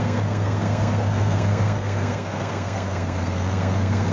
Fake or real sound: fake